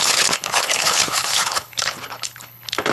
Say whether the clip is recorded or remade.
remade